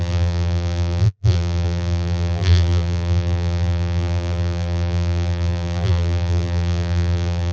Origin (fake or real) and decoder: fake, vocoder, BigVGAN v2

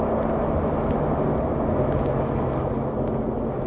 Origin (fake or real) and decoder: real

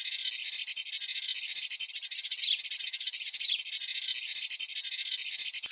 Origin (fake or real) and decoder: real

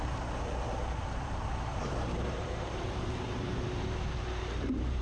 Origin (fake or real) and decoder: fake, vocoder, BigVGAN v2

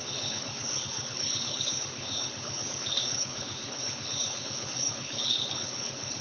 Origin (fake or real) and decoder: fake, codec, HILCodec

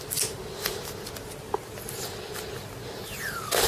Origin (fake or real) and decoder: real